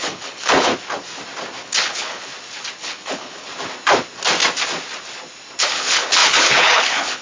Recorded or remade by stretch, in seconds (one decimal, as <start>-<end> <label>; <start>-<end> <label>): 0.0-0.7 remade; 0.7-1.6 recorded; 1.6-2.3 remade; 2.3-2.8 recorded; 2.8-3.5 remade; 3.5-5.6 recorded; 5.6-7.2 remade